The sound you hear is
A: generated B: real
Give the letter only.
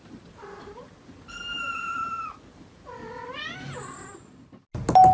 B